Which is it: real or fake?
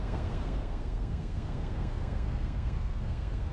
fake